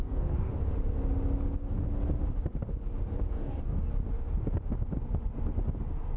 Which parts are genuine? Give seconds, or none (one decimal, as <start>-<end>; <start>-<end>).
0.5-3.3; 3.9-6.2

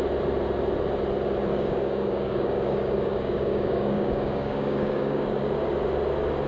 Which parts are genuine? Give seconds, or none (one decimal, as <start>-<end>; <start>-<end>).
0.0-1.5; 5.4-6.5